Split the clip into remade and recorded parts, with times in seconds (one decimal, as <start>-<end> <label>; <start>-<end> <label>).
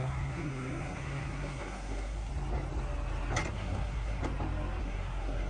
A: 0.0-2.3 remade; 2.3-3.5 recorded; 3.5-4.2 remade; 4.2-4.8 recorded; 4.8-5.5 remade